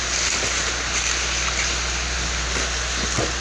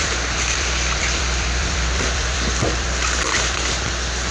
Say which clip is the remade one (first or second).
second